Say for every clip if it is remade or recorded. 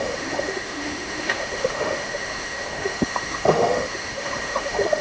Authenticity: remade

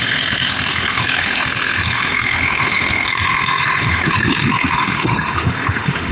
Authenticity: remade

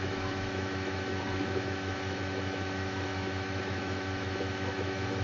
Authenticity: remade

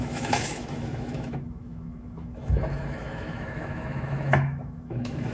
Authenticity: remade